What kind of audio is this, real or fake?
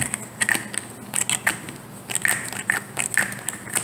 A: real